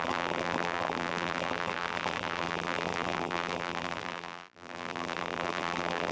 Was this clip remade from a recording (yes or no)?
yes